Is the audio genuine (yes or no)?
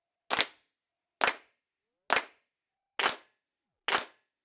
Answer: yes